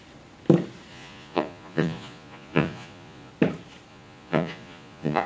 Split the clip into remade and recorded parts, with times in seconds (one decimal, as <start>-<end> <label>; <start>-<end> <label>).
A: 0.0-0.9 recorded; 0.9-3.3 remade; 3.3-3.9 recorded; 3.9-5.3 remade